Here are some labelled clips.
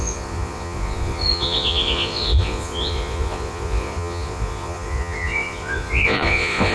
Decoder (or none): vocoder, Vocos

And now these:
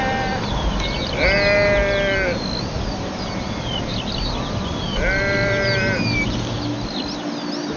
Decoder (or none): none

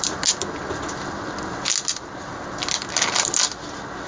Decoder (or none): none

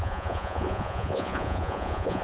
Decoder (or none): vocoder, Vocos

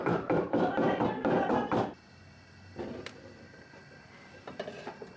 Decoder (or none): vocoder, BigVGAN v2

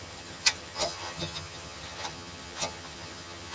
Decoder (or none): vocoder, HiFi-GAN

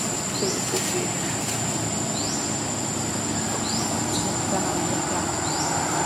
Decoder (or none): none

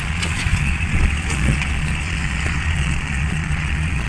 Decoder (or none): vocoder, Vocos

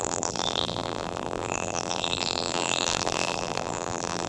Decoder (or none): vocoder, BigVGAN v2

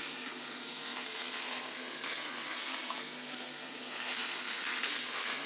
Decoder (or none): codec, SNAC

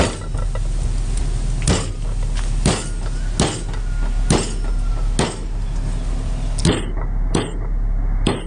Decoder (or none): none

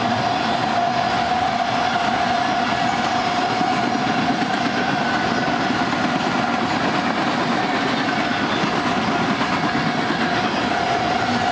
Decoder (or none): none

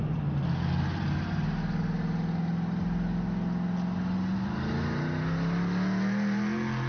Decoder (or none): none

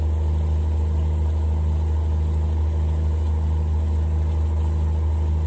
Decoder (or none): none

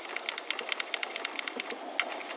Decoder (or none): none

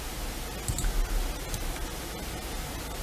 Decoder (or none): none